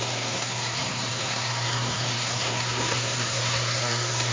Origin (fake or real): fake